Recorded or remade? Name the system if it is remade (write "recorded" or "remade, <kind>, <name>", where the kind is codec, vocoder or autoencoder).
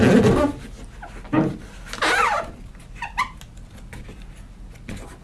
recorded